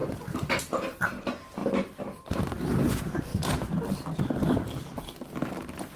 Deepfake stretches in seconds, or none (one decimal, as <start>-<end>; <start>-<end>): 0.0-0.6; 1.6-2.4